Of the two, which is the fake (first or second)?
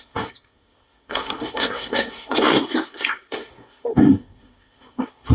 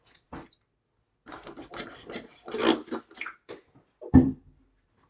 first